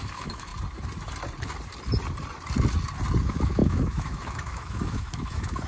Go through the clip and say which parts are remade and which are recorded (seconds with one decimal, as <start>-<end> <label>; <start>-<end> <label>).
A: 0.0-0.5 remade; 0.5-3.2 recorded; 3.2-5.7 remade